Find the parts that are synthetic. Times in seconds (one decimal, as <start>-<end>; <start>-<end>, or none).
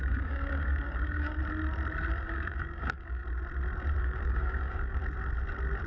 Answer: 0.0-1.4; 2.1-3.2; 4.0-5.0